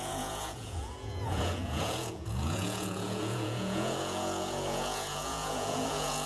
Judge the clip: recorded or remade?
remade